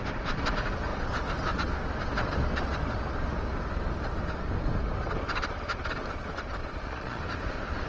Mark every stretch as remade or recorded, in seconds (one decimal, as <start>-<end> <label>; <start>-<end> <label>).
0.0-6.6 recorded; 6.6-7.2 remade; 7.2-7.9 recorded